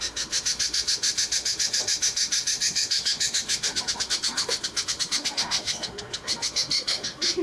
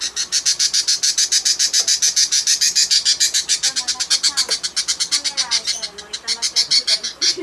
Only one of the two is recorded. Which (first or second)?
second